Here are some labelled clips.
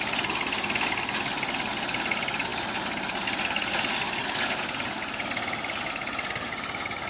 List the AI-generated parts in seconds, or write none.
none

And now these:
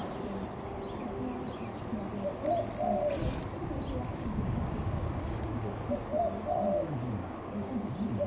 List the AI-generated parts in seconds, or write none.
4.1-5.8; 7.2-7.9

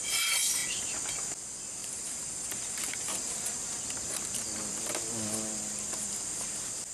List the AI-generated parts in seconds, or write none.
1.8-4.9